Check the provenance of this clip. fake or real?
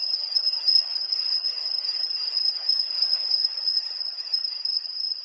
fake